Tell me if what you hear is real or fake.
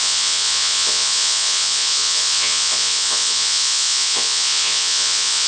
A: fake